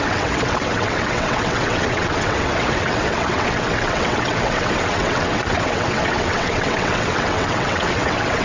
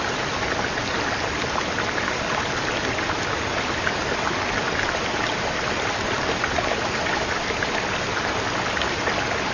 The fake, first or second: first